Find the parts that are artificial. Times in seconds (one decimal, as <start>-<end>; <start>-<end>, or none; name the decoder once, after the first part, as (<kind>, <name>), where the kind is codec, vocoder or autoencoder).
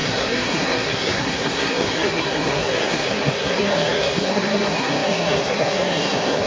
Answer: 0.0-6.5 (codec, SNAC)